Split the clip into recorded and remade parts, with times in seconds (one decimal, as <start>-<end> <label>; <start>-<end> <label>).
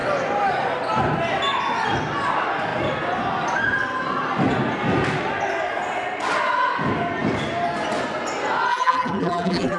0.0-8.7 recorded; 8.7-9.8 remade